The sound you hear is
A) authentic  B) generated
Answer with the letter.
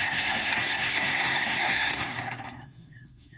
B